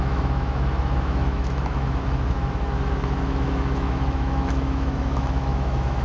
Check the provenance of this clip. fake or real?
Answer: fake